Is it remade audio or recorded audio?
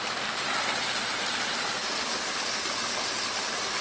recorded